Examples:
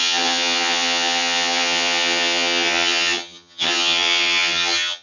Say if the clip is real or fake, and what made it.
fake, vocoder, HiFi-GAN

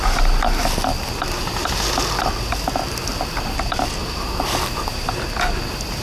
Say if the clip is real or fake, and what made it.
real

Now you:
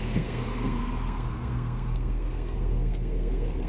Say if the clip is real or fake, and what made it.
fake, codec, SNAC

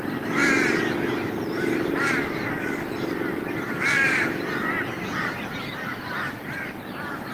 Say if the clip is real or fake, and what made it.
fake, vocoder, BigVGAN v2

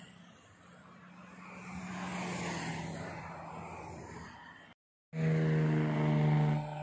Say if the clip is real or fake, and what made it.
real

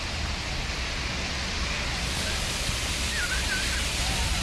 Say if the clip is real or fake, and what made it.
real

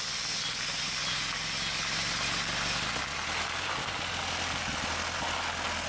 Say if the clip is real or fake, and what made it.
real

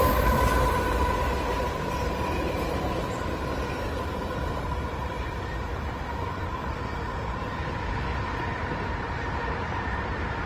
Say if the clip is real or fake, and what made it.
fake, vocoder, BigVGAN v2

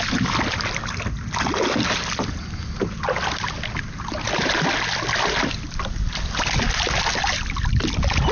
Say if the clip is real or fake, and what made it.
real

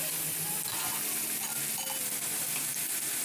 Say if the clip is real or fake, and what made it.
real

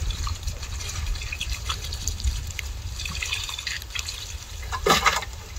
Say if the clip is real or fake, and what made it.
fake, vocoder, BigVGAN v2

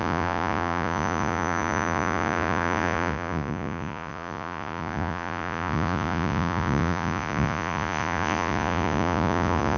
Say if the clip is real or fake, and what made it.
fake, vocoder, Vocos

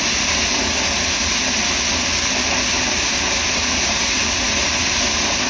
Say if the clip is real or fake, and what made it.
real